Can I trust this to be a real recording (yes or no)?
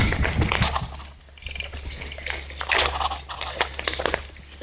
yes